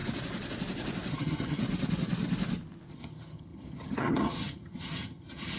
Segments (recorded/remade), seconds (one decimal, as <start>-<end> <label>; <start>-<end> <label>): 0.0-1.1 recorded; 1.1-1.6 remade; 1.6-2.9 recorded; 2.9-5.6 remade